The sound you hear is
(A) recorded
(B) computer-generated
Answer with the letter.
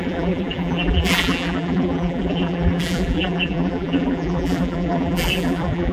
B